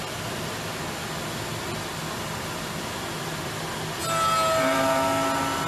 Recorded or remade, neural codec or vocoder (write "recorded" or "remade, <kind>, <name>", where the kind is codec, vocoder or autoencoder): recorded